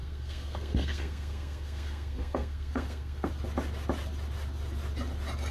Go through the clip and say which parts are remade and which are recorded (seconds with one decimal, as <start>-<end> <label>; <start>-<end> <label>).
0.0-3.3 remade; 3.3-5.5 recorded